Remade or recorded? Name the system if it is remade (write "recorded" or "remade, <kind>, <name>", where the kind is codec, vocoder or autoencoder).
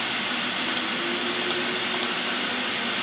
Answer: recorded